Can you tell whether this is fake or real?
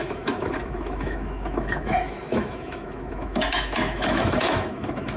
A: fake